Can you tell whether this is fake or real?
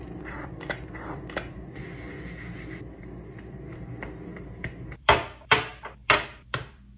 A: fake